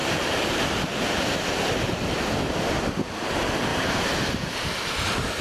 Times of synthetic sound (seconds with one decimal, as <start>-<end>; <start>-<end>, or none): 0.0-2.2; 3.7-4.2